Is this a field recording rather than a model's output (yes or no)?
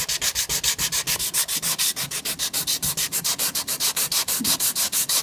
yes